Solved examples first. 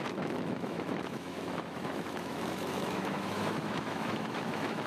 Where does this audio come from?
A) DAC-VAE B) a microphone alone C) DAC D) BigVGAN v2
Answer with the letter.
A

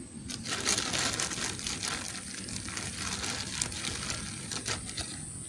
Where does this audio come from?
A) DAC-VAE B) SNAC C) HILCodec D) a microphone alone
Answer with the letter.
D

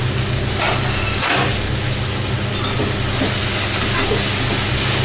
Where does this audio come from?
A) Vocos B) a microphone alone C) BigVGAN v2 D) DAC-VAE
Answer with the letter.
B